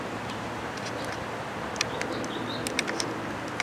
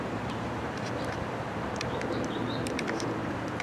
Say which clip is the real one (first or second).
first